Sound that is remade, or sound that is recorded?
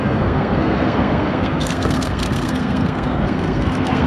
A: remade